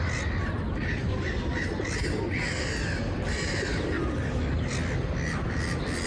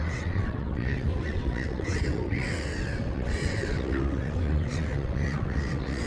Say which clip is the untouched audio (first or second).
first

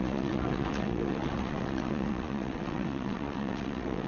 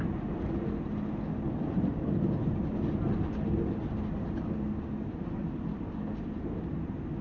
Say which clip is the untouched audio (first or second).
second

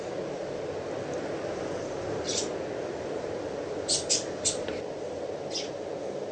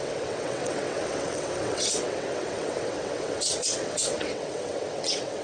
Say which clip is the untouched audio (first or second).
first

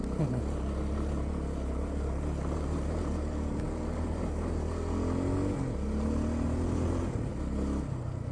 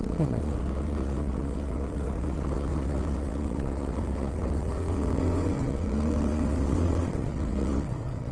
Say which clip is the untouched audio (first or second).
first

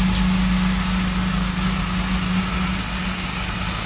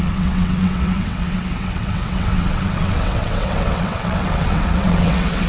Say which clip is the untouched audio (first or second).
first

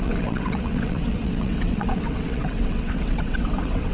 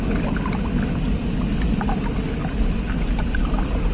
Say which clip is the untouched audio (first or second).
second